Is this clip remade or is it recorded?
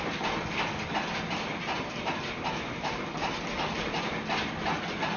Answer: recorded